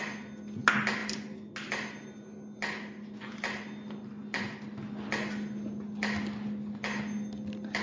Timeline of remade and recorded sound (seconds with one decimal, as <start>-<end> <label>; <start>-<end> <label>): 0.0-7.8 recorded